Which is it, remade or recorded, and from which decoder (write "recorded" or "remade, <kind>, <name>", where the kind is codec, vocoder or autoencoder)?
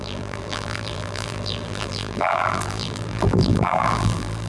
remade, vocoder, BigVGAN v2